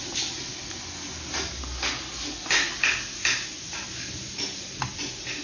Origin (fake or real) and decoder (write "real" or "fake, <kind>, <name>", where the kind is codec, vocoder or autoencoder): real